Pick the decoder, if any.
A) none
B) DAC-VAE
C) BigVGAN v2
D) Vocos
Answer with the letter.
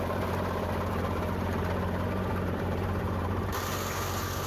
C